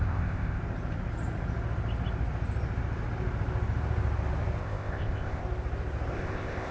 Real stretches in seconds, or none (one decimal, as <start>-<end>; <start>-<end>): 0.6-4.6; 5.4-6.1